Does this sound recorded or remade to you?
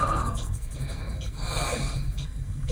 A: remade